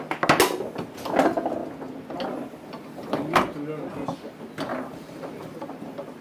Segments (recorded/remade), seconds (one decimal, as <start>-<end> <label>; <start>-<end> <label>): 0.0-4.7 recorded; 4.7-6.2 remade